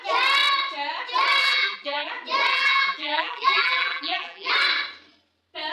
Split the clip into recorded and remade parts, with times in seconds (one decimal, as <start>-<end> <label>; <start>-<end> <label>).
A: 0.0-1.4 recorded; 1.4-2.1 remade; 2.1-2.5 recorded; 2.5-4.5 remade; 4.5-5.7 recorded